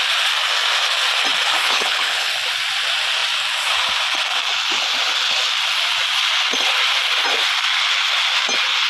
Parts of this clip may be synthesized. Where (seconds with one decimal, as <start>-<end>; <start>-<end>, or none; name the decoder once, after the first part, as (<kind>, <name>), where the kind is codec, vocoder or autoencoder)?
1.6-2.3 (codec, HILCodec)